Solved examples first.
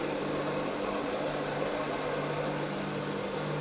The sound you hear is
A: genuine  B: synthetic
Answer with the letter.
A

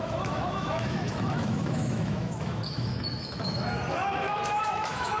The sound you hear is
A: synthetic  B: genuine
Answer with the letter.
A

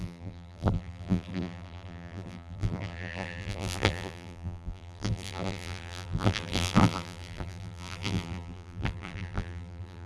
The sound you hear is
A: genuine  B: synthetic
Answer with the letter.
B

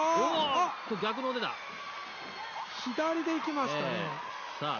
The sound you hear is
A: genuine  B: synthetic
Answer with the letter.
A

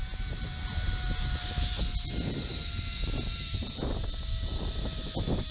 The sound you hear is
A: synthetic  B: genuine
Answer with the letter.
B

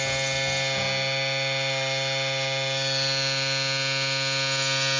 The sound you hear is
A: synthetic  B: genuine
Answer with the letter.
B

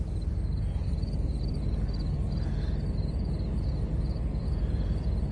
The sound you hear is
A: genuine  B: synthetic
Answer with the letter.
A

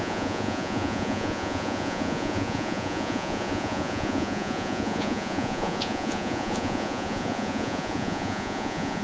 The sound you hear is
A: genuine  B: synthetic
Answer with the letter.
B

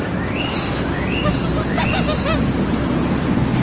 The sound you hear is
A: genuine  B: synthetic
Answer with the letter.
A